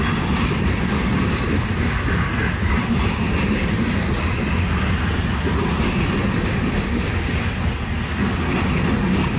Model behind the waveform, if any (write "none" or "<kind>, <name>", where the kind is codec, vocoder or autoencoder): none